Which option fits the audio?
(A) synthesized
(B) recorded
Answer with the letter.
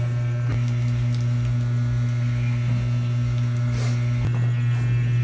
B